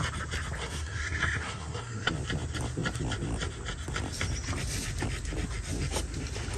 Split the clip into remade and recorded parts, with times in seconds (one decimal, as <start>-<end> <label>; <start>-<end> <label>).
0.0-0.6 recorded; 0.6-2.1 remade; 2.1-6.6 recorded